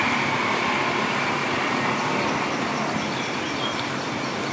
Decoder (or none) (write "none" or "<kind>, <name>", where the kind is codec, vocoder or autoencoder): none